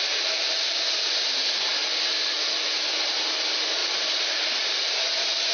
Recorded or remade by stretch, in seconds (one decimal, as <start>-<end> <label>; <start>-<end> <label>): 0.0-5.5 recorded